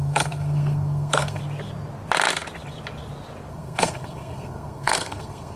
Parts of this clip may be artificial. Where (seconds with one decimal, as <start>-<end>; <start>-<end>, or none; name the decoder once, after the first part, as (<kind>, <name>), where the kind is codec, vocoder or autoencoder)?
0.0-1.4 (codec, SNAC); 3.5-5.6